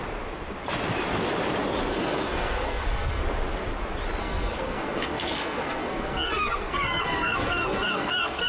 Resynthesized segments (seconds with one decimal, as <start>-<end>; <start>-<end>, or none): 1.9-3.2; 4.2-8.5